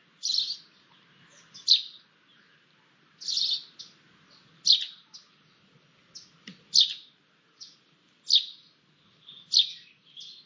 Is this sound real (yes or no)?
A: yes